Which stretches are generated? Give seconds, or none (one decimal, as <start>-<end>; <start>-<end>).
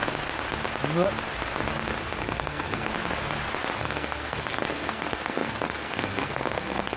2.2-2.9; 3.8-7.0